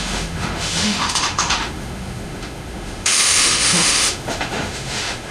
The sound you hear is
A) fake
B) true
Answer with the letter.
A